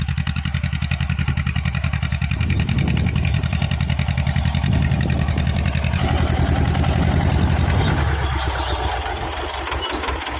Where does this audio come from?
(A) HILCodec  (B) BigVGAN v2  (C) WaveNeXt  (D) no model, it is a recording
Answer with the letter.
D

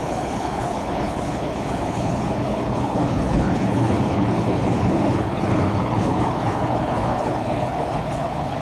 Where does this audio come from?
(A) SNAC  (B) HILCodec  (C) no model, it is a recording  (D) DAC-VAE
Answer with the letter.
B